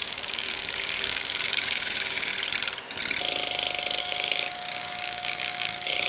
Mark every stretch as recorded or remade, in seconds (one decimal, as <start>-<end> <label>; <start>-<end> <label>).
0.0-2.3 remade; 2.3-4.0 recorded; 4.0-6.1 remade